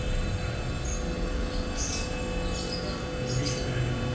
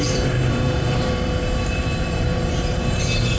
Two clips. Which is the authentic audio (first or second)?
first